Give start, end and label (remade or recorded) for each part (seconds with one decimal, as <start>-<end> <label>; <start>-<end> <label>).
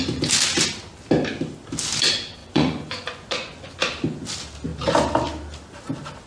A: 0.0-2.4 recorded; 2.4-3.8 remade; 3.8-6.3 recorded